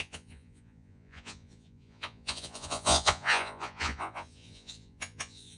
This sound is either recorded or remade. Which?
remade